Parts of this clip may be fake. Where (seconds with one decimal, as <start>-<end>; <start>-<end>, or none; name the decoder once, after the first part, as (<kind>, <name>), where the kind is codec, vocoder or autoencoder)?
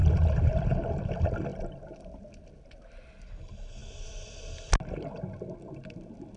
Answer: 1.5-3.2 (vocoder, BigVGAN v2)